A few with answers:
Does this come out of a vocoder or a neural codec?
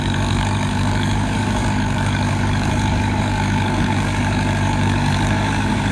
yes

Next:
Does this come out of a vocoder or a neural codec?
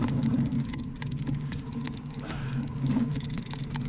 yes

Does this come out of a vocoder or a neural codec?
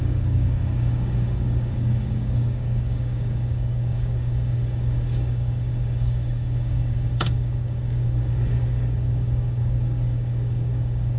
yes